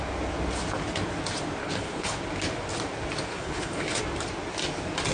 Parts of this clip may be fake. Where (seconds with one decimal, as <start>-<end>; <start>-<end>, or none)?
1.6-2.2; 3.3-4.0